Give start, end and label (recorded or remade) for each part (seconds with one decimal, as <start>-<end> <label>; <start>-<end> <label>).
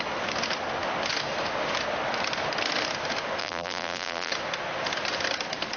0.0-3.4 recorded; 3.4-4.3 remade; 4.3-5.8 recorded